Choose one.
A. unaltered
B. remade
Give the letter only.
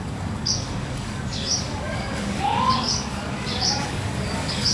B